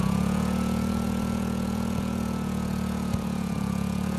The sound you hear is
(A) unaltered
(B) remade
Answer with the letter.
B